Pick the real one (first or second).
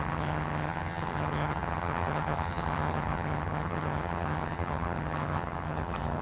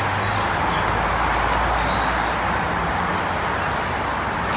second